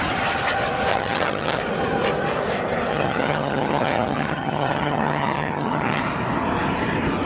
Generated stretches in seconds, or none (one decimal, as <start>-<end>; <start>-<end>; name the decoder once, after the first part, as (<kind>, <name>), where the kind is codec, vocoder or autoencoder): 0.9-1.6 (vocoder, HiFi-GAN); 2.9-6.0